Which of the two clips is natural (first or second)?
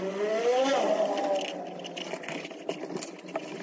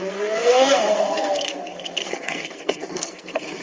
first